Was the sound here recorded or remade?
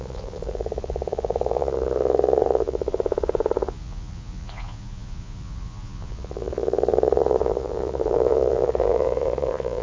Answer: remade